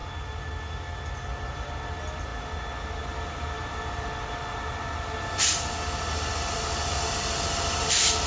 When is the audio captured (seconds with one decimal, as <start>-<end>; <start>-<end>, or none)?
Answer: 0.0-8.3